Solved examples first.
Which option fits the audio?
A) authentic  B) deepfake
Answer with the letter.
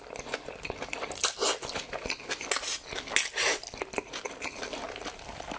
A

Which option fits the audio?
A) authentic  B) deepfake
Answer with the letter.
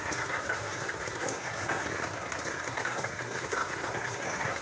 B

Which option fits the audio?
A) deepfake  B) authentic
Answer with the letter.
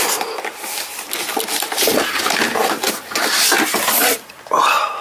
B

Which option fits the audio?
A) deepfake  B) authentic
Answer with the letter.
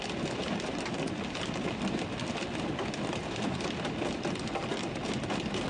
B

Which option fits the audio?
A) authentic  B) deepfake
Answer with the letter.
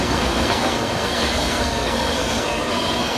B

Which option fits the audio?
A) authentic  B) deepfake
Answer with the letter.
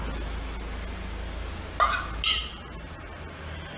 A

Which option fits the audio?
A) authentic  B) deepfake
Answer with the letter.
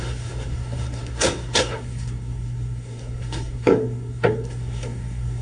B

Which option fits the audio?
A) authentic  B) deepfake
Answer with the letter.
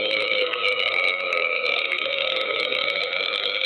B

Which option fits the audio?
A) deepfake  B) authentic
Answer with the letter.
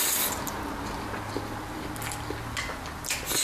B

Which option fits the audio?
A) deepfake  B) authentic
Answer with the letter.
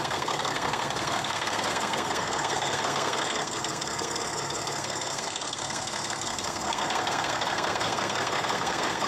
A